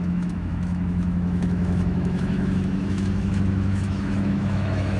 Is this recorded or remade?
remade